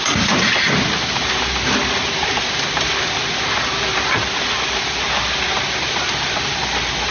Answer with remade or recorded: recorded